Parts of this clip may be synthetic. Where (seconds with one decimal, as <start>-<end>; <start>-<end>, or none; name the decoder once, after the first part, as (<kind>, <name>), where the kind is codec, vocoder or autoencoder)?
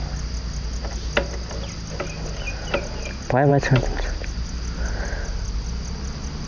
none